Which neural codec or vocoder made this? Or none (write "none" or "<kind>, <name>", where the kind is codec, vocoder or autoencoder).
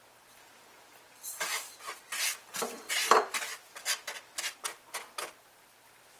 none